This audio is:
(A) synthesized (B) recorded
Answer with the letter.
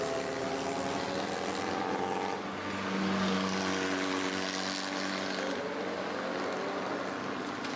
B